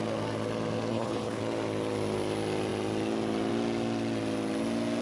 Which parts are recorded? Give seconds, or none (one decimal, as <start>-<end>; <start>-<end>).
0.0-0.9; 1.4-5.0